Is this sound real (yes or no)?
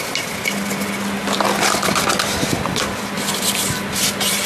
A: yes